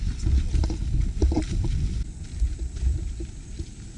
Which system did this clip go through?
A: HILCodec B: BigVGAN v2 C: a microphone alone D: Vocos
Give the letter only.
C